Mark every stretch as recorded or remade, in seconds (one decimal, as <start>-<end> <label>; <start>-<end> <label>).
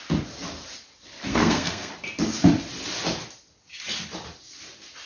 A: 0.0-1.3 recorded; 1.3-1.9 remade; 1.9-5.1 recorded